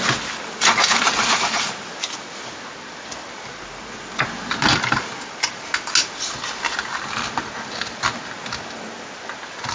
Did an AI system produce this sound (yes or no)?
no